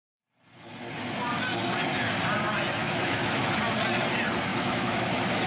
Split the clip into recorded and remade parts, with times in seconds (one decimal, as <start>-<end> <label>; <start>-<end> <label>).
0.0-2.8 recorded; 2.8-3.5 remade; 3.5-4.5 recorded; 4.5-5.5 remade